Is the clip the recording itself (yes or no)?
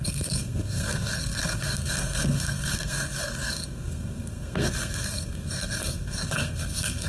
no